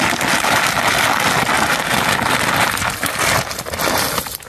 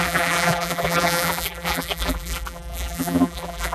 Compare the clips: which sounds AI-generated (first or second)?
second